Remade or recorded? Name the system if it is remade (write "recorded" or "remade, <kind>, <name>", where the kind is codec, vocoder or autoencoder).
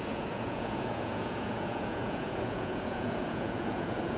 remade, vocoder, Vocos